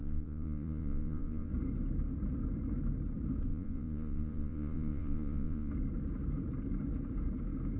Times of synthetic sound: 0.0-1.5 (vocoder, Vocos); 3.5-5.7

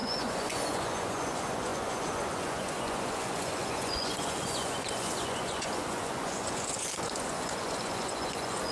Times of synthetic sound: 0.0-8.7 (vocoder, Vocos)

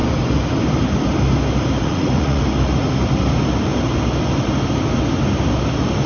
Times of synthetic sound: 1.8-2.4 (vocoder, Vocos)